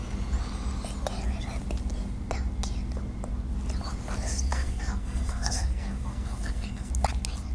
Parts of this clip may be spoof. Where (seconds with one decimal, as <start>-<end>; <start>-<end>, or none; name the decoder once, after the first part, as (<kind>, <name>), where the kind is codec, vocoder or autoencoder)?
4.5-6.9 (codec, SNAC)